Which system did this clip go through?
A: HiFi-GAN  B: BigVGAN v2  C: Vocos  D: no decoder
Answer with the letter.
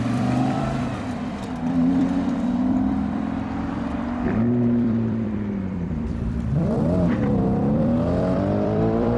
B